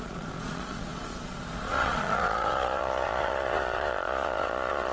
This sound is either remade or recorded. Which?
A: remade